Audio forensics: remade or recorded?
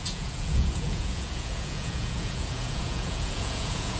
remade